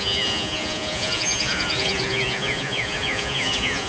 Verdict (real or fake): fake